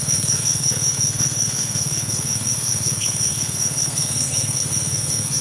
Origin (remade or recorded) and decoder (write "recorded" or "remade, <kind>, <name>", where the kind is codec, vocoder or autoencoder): remade, codec, SNAC